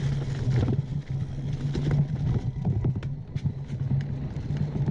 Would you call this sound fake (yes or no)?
no